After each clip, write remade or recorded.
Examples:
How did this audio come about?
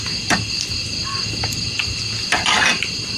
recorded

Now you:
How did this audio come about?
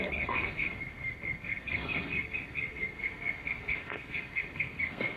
remade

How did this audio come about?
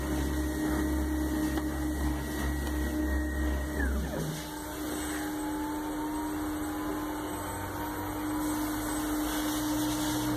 recorded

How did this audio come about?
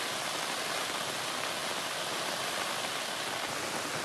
recorded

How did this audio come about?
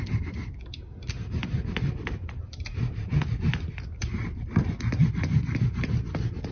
recorded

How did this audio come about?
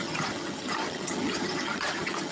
remade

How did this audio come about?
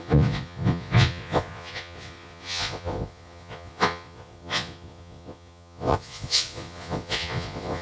remade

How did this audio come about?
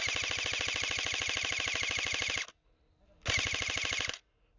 recorded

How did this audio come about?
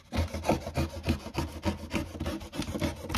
recorded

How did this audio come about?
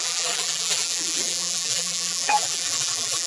remade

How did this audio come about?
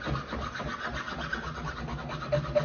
recorded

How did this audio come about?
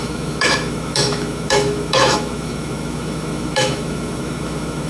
remade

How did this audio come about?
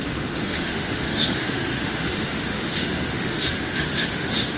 remade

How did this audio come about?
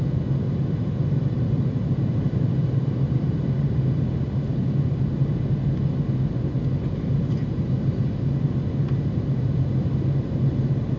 recorded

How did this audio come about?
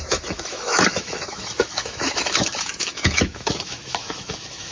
remade